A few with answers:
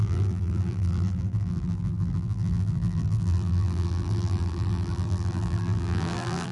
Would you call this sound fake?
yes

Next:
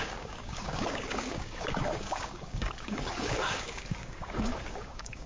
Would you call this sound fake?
yes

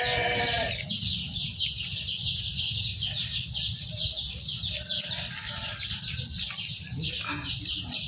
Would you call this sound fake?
no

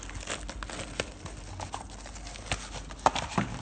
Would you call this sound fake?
no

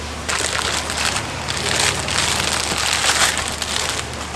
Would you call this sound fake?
no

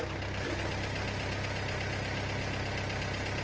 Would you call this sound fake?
no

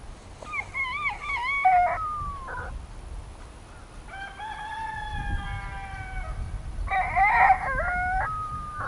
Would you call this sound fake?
no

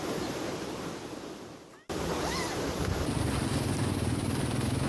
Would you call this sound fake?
no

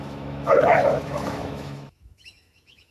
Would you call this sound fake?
yes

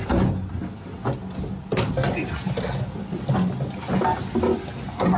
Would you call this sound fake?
no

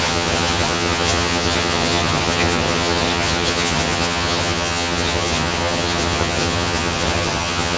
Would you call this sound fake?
yes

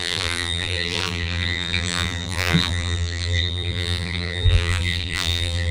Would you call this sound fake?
yes